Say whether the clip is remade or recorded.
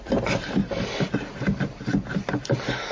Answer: recorded